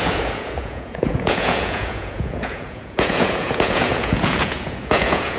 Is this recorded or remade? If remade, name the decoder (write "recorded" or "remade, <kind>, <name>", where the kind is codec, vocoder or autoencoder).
remade, vocoder, Vocos